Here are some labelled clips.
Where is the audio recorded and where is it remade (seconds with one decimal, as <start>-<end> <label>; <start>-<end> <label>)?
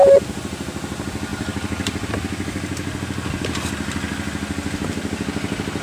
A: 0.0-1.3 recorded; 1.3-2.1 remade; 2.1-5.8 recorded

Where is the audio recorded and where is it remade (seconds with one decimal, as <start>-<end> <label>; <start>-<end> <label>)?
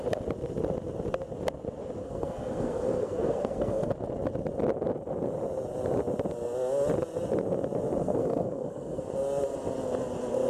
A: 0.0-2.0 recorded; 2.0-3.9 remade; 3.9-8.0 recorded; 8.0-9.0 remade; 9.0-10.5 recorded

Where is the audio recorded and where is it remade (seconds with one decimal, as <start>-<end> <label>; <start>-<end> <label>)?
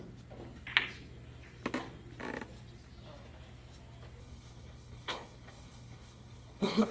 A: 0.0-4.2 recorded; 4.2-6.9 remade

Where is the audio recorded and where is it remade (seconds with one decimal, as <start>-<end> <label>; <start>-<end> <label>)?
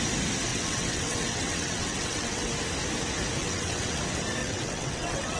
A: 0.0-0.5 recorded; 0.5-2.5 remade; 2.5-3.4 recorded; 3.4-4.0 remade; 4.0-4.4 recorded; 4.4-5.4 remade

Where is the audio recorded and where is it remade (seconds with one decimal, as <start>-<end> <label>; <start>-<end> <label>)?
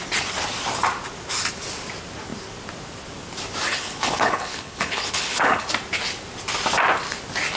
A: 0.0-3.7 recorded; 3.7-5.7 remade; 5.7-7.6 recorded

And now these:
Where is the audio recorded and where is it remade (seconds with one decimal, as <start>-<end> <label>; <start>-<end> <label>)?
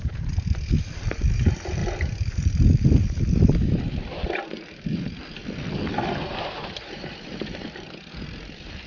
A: 0.0-1.8 remade; 1.8-2.3 recorded; 2.3-5.4 remade; 5.4-6.7 recorded; 6.7-8.9 remade